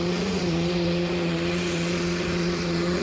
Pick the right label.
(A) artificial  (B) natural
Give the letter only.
A